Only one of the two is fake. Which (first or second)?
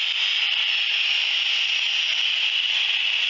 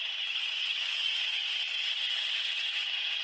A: second